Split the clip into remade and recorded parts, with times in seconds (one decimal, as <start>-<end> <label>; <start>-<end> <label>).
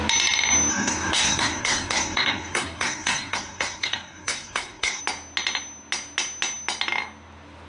0.0-0.7 recorded; 0.7-5.0 remade; 5.0-7.7 recorded